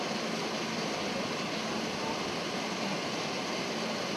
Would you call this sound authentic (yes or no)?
yes